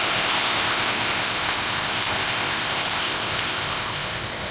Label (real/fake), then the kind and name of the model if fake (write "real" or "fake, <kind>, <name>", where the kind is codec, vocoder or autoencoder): fake, codec, ZipCodec